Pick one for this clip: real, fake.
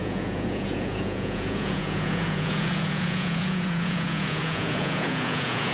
fake